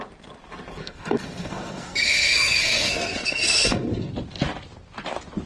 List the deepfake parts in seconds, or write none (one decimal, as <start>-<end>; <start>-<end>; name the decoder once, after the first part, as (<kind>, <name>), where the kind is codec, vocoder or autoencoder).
0.8-4.1 (codec, SNAC)